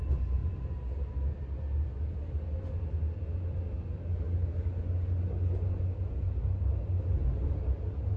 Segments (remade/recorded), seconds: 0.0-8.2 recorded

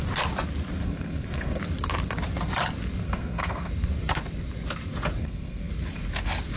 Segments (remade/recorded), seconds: 0.0-0.8 recorded; 0.8-1.6 remade; 1.6-3.0 recorded; 3.0-3.7 remade; 3.7-5.2 recorded; 5.2-5.7 remade; 5.7-6.6 recorded